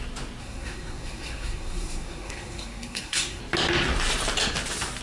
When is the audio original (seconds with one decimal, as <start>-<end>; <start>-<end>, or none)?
0.0-0.4; 3.4-5.0